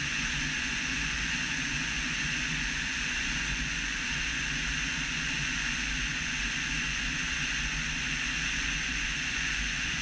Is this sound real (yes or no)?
no